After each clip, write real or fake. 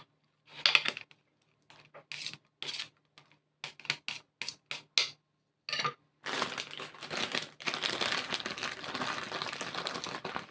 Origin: real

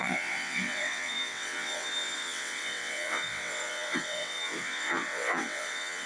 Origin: fake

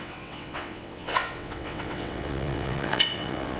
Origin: fake